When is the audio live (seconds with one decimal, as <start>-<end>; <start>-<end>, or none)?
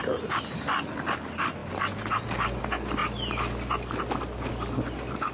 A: 0.0-5.3